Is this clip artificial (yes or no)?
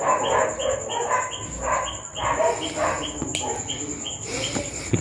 no